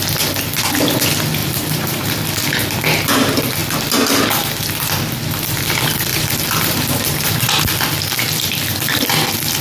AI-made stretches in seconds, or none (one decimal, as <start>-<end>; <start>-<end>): 1.4-2.1; 6.1-7.3